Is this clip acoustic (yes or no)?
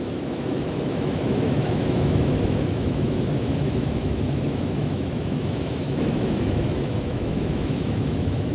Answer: no